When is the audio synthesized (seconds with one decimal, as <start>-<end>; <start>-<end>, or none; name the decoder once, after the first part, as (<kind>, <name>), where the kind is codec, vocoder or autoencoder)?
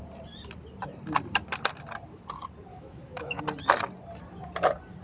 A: 2.7-3.4 (autoencoder, DAC-VAE)